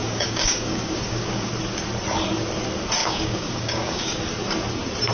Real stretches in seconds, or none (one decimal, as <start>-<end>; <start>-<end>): 1.5-3.0; 4.2-5.1